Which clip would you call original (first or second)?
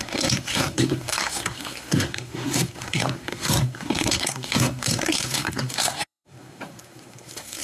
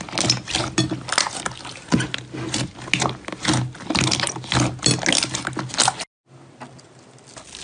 second